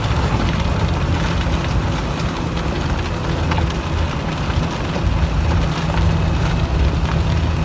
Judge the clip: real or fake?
real